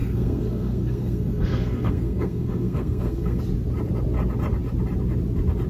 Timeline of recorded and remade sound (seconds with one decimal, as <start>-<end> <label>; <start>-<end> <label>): 0.0-3.4 remade; 3.4-5.7 recorded